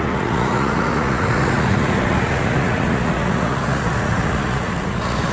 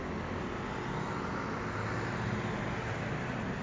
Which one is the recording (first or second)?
second